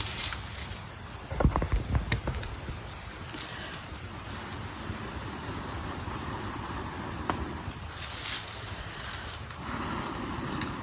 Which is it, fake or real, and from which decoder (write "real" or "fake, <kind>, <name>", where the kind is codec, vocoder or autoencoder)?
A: real